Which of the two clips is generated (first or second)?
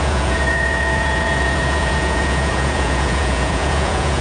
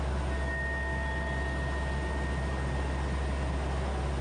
first